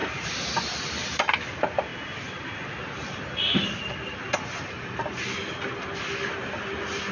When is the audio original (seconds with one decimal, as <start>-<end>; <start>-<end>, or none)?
0.0-7.1